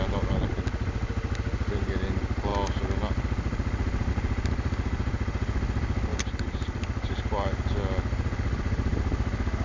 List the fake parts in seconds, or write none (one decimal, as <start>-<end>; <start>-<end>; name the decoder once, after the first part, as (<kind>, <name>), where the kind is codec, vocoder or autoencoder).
6.1-7.7 (vocoder, BigVGAN v2)